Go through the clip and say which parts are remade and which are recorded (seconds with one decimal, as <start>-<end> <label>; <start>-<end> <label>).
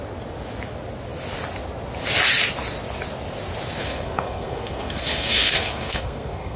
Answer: 0.0-3.8 recorded; 3.8-6.6 remade